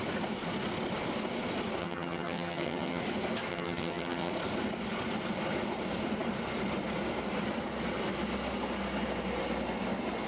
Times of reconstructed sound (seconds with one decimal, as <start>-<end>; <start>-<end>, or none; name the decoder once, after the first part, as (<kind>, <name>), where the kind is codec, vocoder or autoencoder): 1.8-3.0 (vocoder, HiFi-GAN); 3.5-4.3

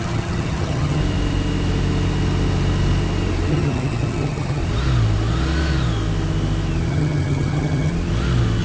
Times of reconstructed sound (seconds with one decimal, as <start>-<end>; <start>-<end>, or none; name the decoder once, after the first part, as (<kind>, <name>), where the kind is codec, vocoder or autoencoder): 0.0-1.0 (vocoder, HiFi-GAN); 3.5-4.6; 6.9-7.9

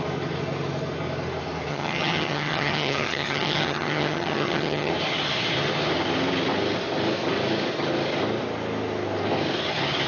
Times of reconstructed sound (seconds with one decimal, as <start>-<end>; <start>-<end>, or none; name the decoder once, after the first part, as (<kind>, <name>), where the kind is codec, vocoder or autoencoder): 1.7-4.9 (vocoder, HiFi-GAN)

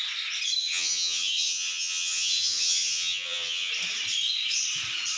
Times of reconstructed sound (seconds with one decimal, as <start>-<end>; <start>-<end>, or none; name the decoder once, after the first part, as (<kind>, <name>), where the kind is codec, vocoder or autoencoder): 0.6-3.7 (vocoder, HiFi-GAN)

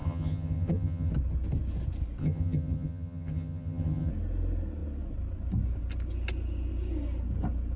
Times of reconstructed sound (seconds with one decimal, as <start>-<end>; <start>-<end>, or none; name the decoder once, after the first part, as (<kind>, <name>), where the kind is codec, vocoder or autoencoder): 0.0-1.1 (vocoder, HiFi-GAN); 2.2-4.1

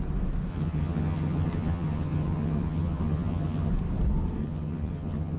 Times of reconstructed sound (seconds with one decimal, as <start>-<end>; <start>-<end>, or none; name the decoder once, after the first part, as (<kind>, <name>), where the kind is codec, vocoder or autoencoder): 0.5-3.7 (vocoder, HiFi-GAN); 4.4-5.4